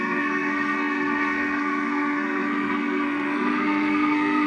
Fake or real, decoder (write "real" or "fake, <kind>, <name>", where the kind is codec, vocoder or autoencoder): fake, codec, SNAC